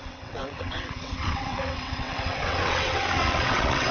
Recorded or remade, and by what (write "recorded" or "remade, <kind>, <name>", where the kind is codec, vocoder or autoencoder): remade, vocoder, WaveNeXt